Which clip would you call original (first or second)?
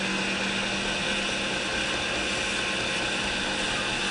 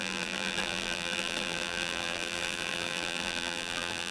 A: first